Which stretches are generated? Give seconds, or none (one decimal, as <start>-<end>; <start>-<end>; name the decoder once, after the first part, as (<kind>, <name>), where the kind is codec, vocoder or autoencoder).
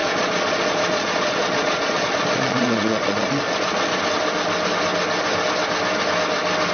0.0-4.0 (vocoder, Vocos)